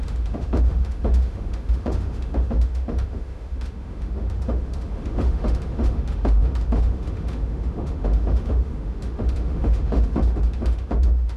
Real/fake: fake